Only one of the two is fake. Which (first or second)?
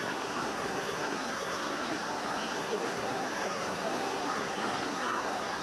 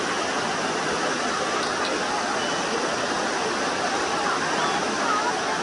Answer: first